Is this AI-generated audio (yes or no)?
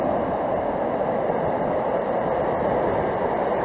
no